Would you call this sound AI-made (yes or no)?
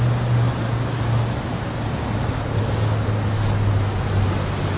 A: no